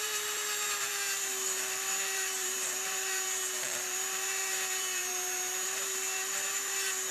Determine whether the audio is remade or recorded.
remade